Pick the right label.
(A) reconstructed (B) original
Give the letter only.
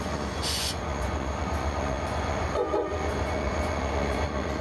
A